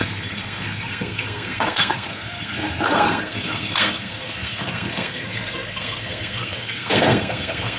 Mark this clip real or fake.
fake